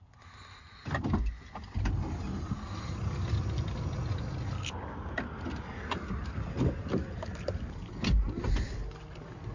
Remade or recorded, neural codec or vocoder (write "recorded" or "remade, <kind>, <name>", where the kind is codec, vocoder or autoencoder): recorded